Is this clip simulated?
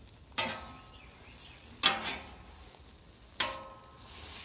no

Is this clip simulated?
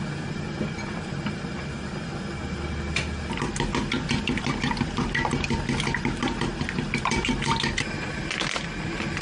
no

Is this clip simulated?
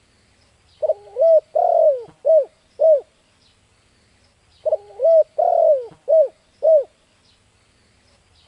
no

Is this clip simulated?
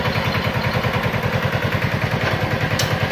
no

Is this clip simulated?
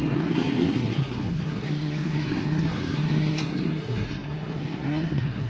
yes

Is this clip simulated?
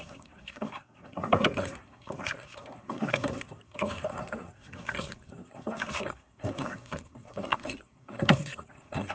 yes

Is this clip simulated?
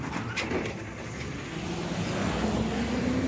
no